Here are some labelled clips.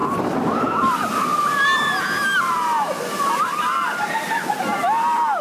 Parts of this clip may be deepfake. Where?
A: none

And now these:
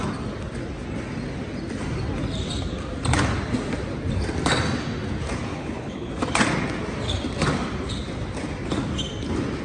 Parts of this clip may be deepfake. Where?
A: 5.5-6.1 (codec, HILCodec)

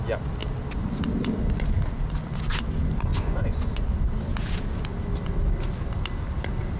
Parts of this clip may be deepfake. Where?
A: 3.1-3.9 (vocoder, Vocos)

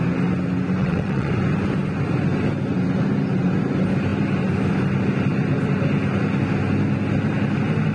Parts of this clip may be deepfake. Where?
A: 0.8-1.3 (vocoder, WaveNeXt)

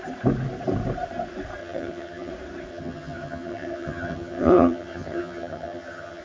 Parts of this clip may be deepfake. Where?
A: 1.6-2.3 (vocoder, HiFi-GAN); 2.7-6.2

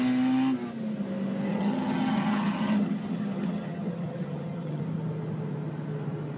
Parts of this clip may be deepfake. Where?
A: 1.5-4.8 (vocoder, HiFi-GAN)

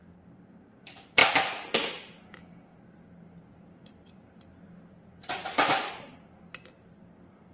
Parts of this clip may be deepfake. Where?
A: none